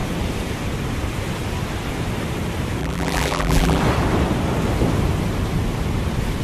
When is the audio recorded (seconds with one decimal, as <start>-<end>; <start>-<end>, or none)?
0.0-2.8; 3.8-6.4